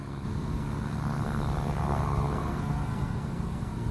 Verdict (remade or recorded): remade